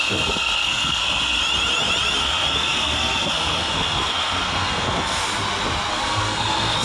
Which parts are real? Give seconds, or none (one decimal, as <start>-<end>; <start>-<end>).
1.4-2.2; 5.2-5.9

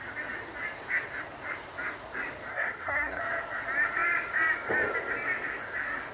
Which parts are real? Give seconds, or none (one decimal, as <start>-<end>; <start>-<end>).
0.0-2.5; 3.2-6.1